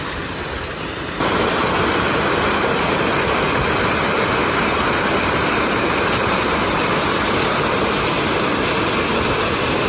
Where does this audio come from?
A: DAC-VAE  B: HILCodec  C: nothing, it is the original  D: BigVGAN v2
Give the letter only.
C